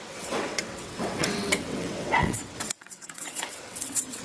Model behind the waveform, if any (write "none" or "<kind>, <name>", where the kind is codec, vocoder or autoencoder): vocoder, WaveNeXt